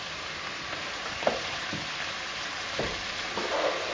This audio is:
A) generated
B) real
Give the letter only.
B